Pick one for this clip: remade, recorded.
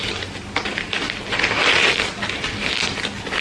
recorded